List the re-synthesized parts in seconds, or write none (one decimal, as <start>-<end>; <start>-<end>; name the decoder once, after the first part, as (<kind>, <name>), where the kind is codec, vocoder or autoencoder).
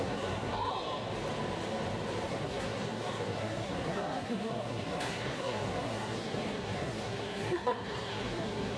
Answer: 0.0-0.7 (codec, SNAC); 2.3-8.8